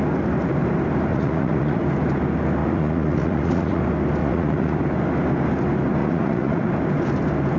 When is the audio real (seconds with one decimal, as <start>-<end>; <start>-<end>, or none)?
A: 0.0-1.1; 1.8-2.6; 3.8-4.2; 4.8-6.0; 6.7-7.6